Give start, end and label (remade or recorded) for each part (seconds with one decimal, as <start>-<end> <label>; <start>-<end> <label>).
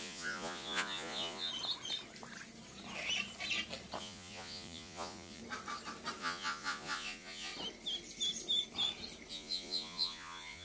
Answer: 0.0-1.5 remade; 1.5-4.0 recorded; 4.0-5.4 remade; 5.4-6.2 recorded; 6.2-7.5 remade; 7.5-9.3 recorded; 9.3-10.6 remade